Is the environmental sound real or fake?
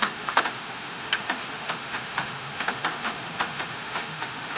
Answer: fake